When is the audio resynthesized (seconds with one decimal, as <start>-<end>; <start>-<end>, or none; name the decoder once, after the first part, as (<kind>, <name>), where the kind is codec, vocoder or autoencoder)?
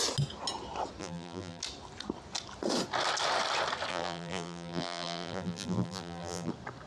1.0-1.6 (vocoder, BigVGAN v2); 3.9-6.5